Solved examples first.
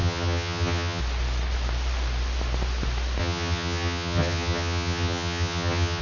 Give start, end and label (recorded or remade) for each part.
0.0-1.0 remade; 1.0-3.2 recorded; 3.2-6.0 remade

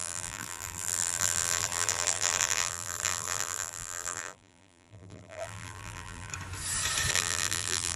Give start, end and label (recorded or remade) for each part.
0.0-6.3 remade; 6.3-7.1 recorded; 7.1-8.0 remade

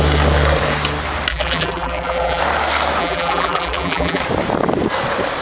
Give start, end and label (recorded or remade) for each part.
0.0-1.3 recorded; 1.3-2.4 remade; 2.4-3.0 recorded; 3.0-4.2 remade; 4.2-5.4 recorded

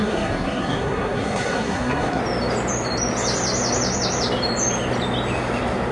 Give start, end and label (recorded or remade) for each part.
0.0-2.2 remade; 2.2-5.9 recorded

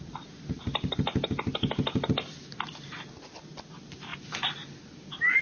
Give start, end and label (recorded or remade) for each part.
0.0-5.4 recorded